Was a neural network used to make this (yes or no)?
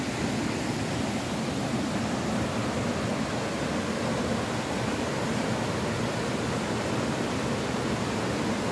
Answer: no